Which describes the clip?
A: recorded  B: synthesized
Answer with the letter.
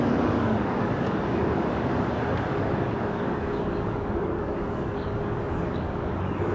B